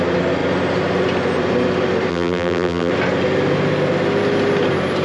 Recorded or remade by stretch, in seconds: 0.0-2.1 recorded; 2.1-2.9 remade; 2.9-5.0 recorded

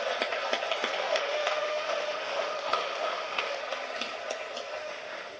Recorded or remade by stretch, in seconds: 0.0-0.9 recorded; 0.9-3.6 remade; 3.6-4.8 recorded; 4.8-5.4 remade